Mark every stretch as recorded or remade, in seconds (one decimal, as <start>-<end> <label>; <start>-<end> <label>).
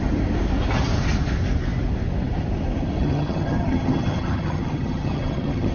0.0-3.0 recorded; 3.0-5.7 remade